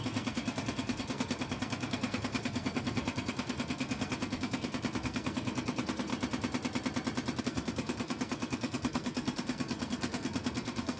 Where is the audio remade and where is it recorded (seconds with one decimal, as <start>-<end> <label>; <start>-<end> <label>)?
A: 0.0-6.1 remade; 6.1-7.4 recorded; 7.4-11.0 remade

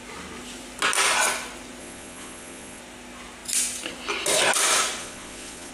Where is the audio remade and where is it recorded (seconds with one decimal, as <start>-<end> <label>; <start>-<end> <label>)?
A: 0.0-1.8 recorded; 1.8-2.8 remade; 2.8-5.0 recorded; 5.0-5.7 remade

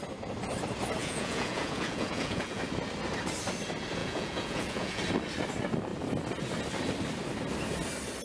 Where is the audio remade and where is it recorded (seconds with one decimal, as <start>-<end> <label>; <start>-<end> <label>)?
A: 0.0-1.0 recorded; 1.0-2.6 remade; 2.6-4.0 recorded; 4.0-5.0 remade; 5.0-8.2 recorded

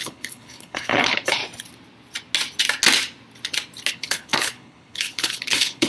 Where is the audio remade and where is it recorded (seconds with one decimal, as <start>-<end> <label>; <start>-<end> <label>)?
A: 0.0-1.4 remade; 1.4-3.9 recorded; 3.9-5.9 remade